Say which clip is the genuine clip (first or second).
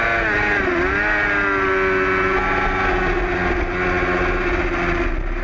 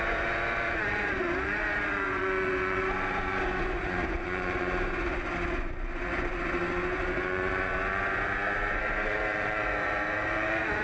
first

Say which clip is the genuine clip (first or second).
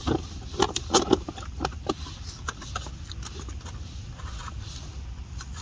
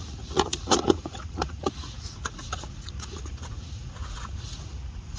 first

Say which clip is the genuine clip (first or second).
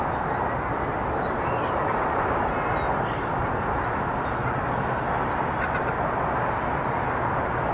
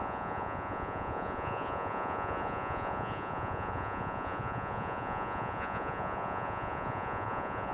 first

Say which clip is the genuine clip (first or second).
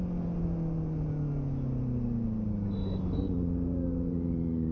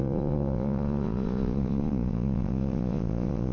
first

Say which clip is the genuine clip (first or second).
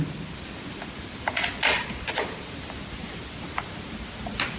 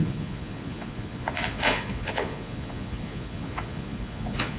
first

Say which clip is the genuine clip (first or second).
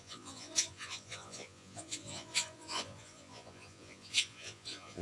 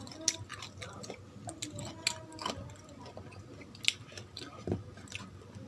second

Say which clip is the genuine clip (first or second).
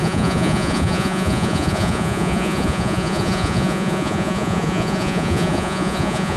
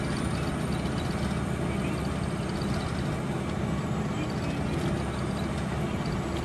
second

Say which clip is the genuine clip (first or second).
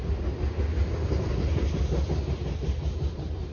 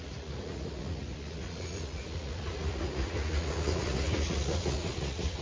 first